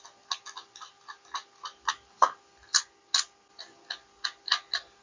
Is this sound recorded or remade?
recorded